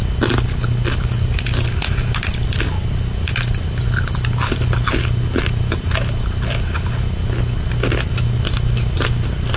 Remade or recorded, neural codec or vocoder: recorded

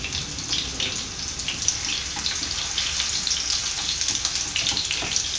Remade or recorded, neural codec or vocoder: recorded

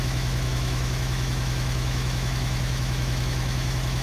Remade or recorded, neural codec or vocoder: remade, autoencoder, DAC-VAE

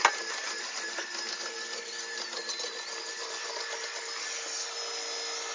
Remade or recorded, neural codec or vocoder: recorded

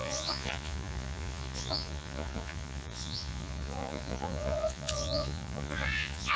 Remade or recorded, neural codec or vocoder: remade, vocoder, Vocos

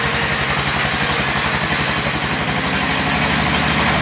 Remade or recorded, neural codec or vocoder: recorded